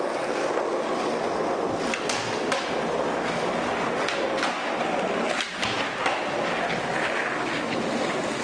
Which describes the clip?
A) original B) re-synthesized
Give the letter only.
A